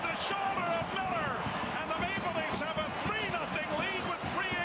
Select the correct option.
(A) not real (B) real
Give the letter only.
B